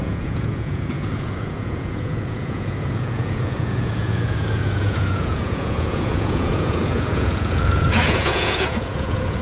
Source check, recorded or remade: remade